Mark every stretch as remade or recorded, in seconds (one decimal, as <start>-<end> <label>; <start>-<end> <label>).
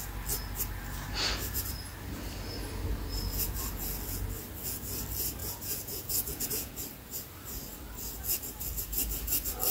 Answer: 0.0-5.4 recorded; 5.4-6.7 remade; 6.7-9.7 recorded